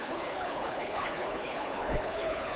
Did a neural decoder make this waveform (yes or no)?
yes